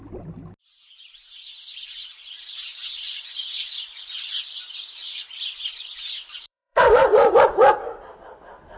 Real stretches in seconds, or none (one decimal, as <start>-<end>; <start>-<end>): 0.0-2.8; 4.1-5.0; 7.3-8.8